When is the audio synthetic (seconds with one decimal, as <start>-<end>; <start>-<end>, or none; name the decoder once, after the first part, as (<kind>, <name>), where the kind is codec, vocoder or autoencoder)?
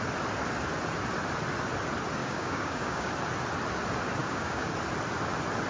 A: 2.2-3.1 (codec, DAC); 4.2-4.7